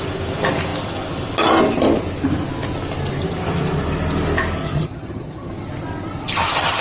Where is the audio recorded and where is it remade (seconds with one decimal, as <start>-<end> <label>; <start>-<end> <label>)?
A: 0.0-4.6 recorded; 4.6-5.5 remade; 5.5-6.8 recorded